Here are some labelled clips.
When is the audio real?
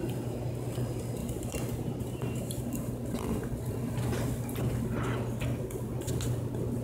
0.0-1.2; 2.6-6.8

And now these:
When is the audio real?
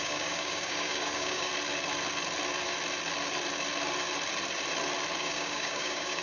1.5-5.2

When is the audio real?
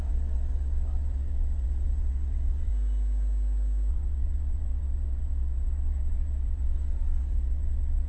2.7-3.9